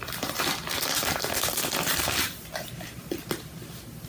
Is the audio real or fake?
real